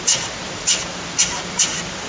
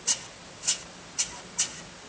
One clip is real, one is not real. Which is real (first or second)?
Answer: second